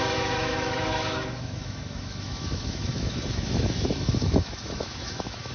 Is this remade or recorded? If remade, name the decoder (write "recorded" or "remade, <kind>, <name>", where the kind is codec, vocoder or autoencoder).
remade, autoencoder, DAC-VAE